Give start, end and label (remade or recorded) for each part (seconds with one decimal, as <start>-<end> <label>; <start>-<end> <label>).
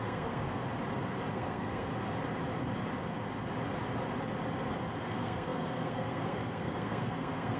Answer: 0.0-0.6 remade; 0.6-1.3 recorded; 1.3-1.9 remade; 1.9-5.0 recorded; 5.0-7.6 remade